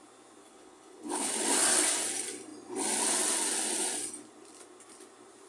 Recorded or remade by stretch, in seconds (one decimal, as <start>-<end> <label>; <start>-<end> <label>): 0.0-0.4 recorded; 0.4-1.3 remade; 1.3-5.5 recorded